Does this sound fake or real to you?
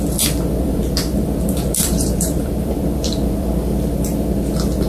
fake